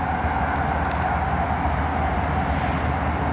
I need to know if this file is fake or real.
real